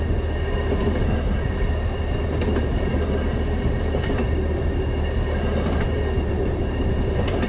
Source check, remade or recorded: recorded